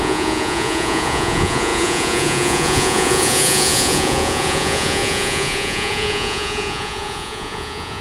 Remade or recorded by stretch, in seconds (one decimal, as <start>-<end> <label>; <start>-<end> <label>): 0.0-8.0 remade